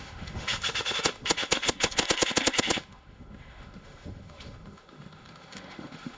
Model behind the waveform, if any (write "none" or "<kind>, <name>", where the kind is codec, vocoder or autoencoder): autoencoder, DAC-VAE